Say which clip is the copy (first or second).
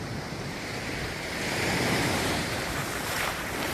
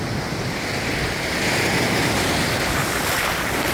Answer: first